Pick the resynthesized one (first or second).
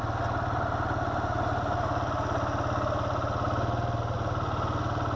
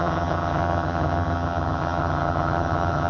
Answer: second